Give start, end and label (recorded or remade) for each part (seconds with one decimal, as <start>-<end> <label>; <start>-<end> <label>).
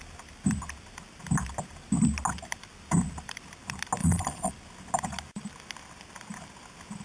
0.0-4.0 recorded; 4.0-4.5 remade; 4.5-7.0 recorded